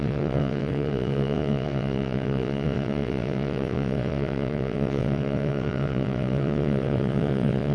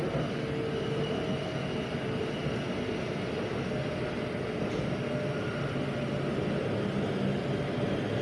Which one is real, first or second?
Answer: second